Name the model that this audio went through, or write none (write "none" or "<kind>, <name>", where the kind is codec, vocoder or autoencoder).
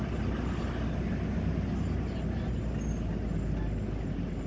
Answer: none